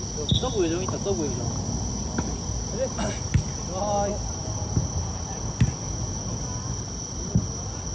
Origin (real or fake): real